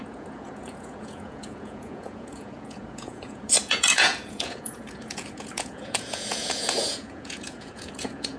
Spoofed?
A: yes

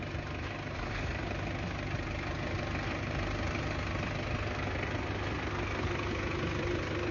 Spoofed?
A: no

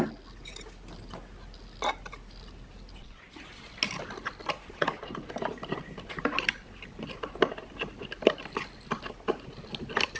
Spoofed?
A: no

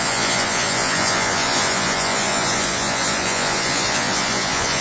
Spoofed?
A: yes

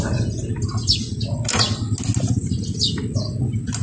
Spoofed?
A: no